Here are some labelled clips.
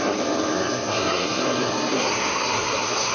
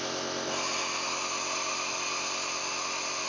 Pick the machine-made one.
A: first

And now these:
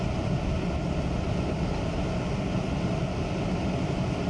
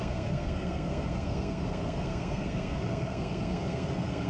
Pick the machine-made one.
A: second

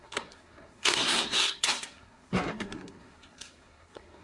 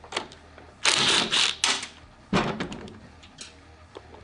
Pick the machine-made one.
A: first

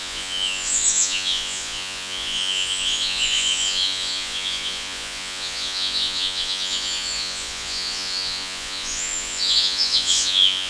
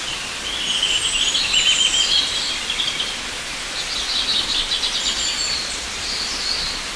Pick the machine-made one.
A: first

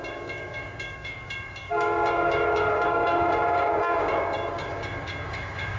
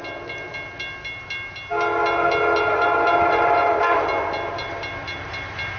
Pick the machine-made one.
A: first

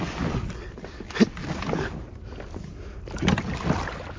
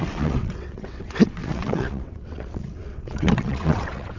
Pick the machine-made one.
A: second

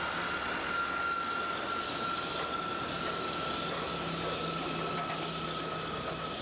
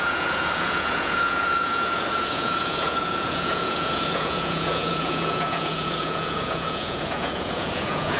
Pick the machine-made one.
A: second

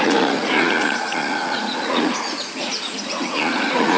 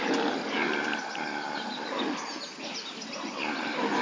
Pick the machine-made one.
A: first